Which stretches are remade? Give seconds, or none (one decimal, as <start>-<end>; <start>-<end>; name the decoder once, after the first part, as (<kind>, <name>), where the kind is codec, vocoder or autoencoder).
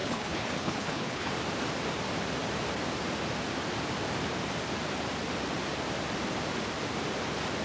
0.0-1.3 (codec, HILCodec)